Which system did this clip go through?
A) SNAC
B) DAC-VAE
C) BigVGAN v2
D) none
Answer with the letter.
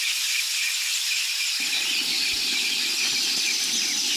D